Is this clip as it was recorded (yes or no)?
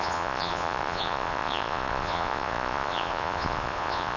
no